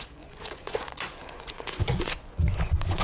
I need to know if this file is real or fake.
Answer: fake